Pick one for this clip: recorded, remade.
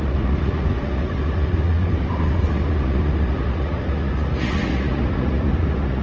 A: remade